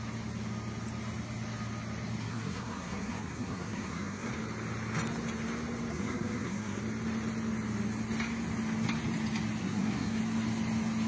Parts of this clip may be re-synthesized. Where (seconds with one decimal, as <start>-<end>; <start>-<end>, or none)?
2.2-4.3; 5.9-6.8; 9.6-10.2